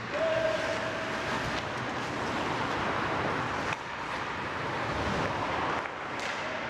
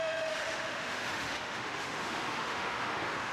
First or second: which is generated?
second